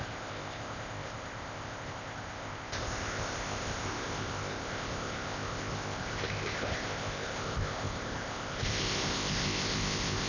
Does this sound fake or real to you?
fake